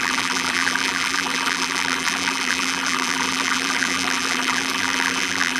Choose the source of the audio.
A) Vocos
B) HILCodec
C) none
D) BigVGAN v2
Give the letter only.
D